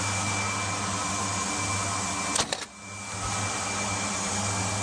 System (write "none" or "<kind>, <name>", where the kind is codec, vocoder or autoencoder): none